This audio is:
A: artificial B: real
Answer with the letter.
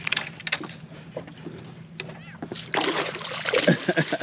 B